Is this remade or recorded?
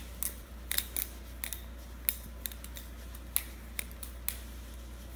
recorded